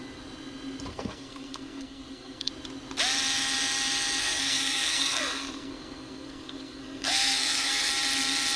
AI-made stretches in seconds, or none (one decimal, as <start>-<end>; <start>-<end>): 0.9-2.5; 4.2-7.9